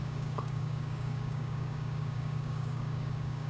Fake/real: fake